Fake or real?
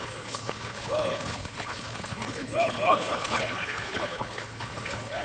fake